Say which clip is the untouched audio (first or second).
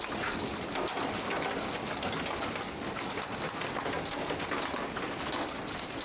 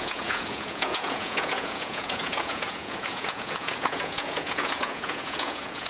first